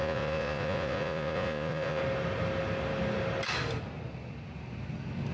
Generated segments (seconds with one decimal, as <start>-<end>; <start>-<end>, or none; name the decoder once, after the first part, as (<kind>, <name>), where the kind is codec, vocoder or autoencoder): 0.0-2.0 (vocoder, Vocos)